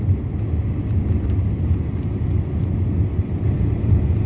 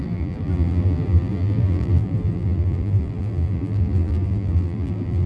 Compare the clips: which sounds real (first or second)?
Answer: first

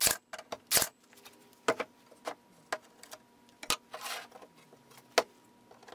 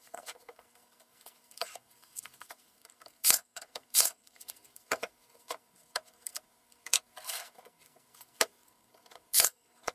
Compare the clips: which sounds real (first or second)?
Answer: first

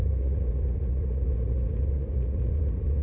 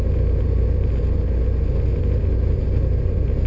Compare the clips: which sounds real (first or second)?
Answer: second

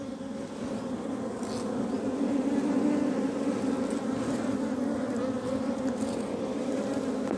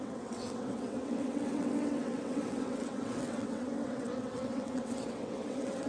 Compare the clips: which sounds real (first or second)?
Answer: first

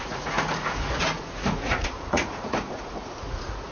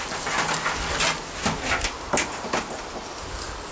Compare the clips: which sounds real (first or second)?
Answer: second